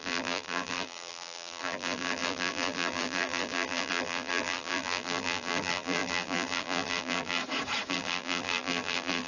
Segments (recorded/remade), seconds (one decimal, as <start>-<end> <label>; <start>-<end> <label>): 0.0-7.4 remade; 7.4-7.9 recorded; 7.9-9.3 remade